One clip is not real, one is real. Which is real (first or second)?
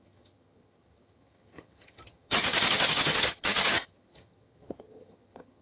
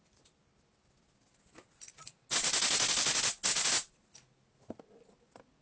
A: second